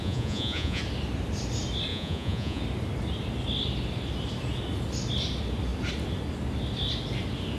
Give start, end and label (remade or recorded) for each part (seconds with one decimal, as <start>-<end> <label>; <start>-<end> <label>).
0.0-0.8 remade; 0.8-1.9 recorded; 1.9-2.6 remade; 2.6-7.6 recorded